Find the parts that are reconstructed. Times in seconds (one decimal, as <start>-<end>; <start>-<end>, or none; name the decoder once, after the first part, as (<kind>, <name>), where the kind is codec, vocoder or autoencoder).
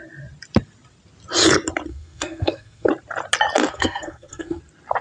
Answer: 1.9-2.9 (codec, SNAC); 3.7-4.6